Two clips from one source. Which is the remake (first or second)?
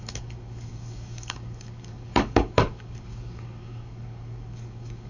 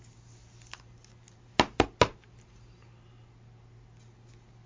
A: first